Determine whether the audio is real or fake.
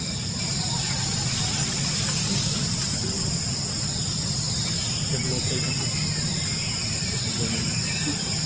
real